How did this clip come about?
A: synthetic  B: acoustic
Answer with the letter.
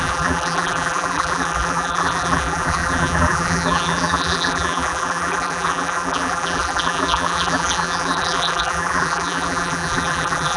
A